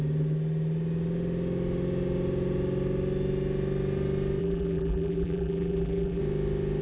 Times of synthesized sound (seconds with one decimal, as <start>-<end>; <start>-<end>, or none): 4.4-6.2